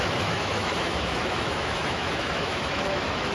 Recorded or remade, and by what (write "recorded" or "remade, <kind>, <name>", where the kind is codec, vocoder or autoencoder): remade, autoencoder, DAC-VAE